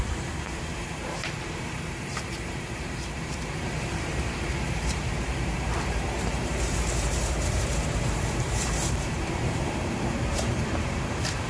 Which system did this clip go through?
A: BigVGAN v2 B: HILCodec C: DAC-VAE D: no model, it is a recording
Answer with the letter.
A